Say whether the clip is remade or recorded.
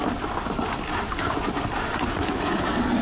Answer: recorded